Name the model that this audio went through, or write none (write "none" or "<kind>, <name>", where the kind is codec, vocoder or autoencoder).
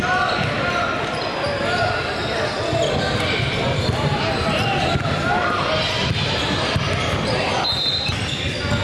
none